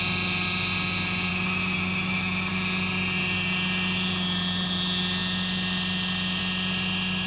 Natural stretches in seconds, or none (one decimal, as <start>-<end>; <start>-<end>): 0.0-1.3; 2.5-7.3